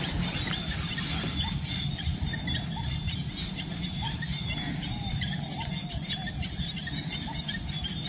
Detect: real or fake real